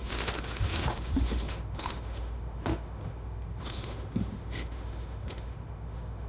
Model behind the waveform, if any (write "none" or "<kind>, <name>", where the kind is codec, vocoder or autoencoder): autoencoder, DAC-VAE